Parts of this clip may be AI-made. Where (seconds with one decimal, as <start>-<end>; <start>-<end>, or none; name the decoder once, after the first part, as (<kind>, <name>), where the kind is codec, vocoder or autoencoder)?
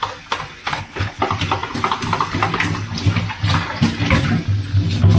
0.6-1.2 (codec, HILCodec)